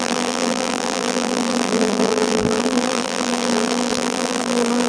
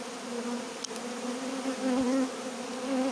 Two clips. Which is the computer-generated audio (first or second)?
first